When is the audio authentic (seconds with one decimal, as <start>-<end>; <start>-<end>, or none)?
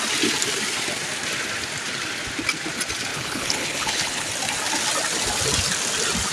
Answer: 0.0-3.1; 4.3-6.3